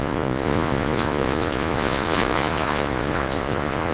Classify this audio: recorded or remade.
remade